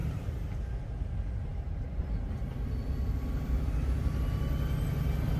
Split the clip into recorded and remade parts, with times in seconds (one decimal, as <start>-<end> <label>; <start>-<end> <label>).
0.0-1.1 remade; 1.1-1.5 recorded; 1.5-2.0 remade; 2.0-5.4 recorded

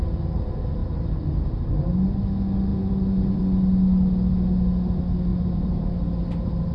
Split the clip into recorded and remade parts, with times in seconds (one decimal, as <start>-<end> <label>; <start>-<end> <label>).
0.0-0.8 recorded; 0.8-1.7 remade; 1.7-2.7 recorded; 2.7-3.4 remade; 3.4-5.3 recorded; 5.3-5.9 remade; 5.9-6.7 recorded

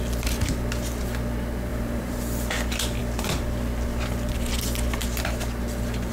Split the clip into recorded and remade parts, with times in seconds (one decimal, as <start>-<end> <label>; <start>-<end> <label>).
0.0-1.7 recorded; 1.7-2.2 remade; 2.2-6.1 recorded